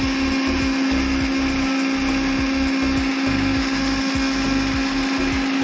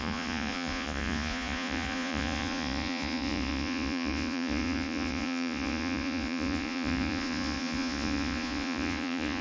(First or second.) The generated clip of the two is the second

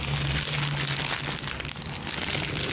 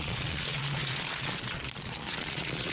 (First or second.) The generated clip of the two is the second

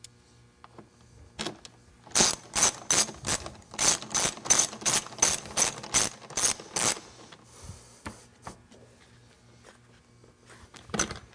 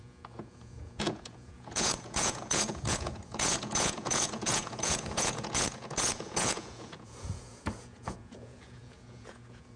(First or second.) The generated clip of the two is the second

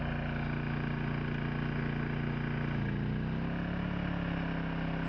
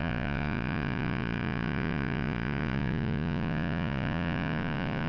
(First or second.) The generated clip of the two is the second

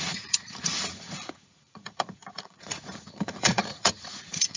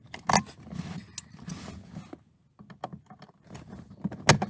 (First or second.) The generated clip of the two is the first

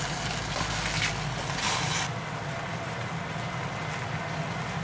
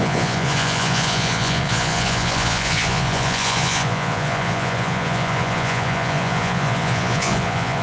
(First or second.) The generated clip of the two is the second